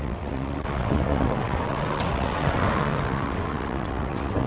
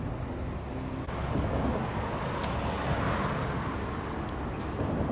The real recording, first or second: second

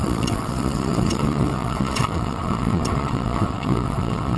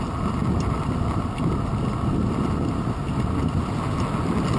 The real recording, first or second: second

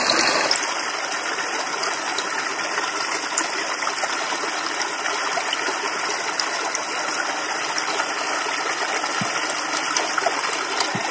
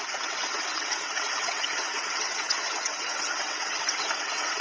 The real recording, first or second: first